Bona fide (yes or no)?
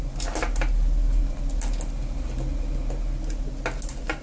yes